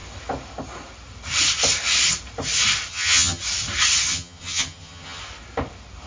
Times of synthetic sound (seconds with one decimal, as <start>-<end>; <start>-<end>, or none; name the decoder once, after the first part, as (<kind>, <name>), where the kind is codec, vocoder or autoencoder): 2.9-3.4 (vocoder, HiFi-GAN); 4.1-5.2

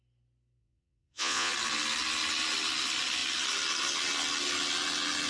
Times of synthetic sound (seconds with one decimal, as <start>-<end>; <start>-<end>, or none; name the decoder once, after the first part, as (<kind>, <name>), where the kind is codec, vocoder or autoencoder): 0.6-1.5 (vocoder, Vocos)

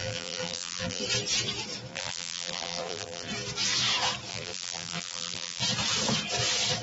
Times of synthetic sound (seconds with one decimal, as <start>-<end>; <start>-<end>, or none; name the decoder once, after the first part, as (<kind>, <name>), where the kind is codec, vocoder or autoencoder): 0.0-1.0 (vocoder, BigVGAN v2); 1.9-3.3; 4.3-5.6